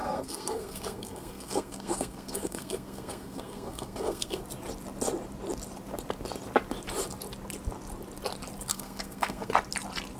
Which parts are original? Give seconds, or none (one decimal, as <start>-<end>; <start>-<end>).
4.4-8.7; 9.5-10.2